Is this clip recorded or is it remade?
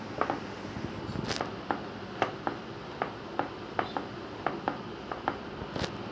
recorded